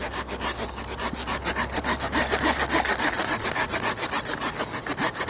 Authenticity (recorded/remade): recorded